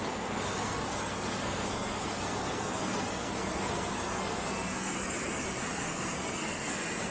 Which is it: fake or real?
fake